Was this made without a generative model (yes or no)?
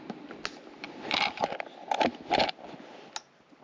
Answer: yes